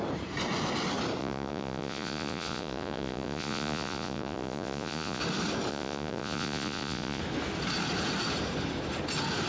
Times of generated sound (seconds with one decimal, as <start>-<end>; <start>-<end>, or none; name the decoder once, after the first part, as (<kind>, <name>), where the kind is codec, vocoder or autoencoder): 1.2-5.2 (vocoder, Vocos); 5.7-7.2